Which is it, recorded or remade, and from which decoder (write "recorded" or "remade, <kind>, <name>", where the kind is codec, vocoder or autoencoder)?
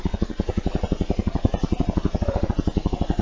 recorded